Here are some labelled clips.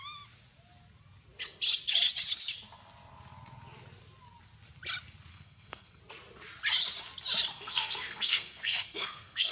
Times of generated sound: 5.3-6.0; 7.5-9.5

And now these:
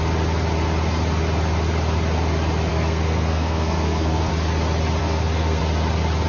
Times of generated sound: 2.7-4.3; 5.0-5.6

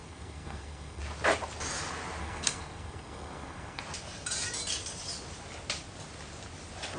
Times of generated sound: 0.0-1.0; 2.2-3.8

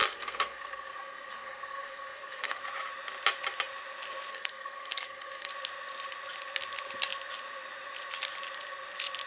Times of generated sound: 0.0-2.6; 4.3-5.5

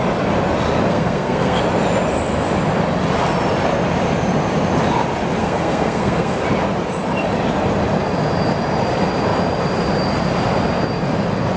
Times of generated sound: 0.9-1.6; 5.4-6.4

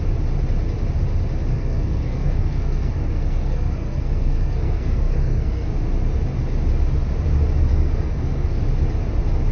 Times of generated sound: 1.5-5.7; 7.7-8.6